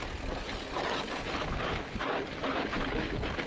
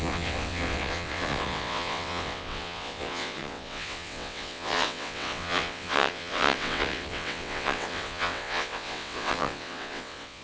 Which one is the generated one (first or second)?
second